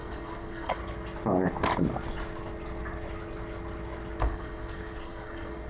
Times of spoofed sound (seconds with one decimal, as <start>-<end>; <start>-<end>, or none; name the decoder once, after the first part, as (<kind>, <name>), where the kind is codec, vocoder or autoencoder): 0.0-0.8 (codec, SNAC); 4.2-5.7